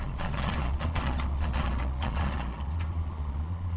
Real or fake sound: fake